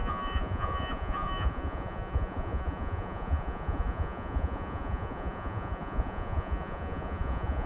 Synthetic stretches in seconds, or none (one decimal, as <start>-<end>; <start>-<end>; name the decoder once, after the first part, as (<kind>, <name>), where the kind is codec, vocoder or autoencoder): 0.0-7.7 (vocoder, Vocos)